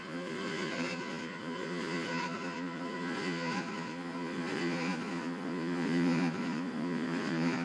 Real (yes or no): no